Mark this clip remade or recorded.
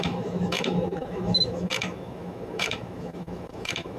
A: remade